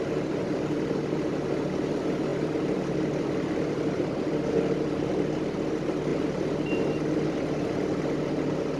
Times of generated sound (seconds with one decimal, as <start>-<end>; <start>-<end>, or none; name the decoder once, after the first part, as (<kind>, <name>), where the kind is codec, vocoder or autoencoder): 2.3-4.5 (vocoder, BigVGAN v2)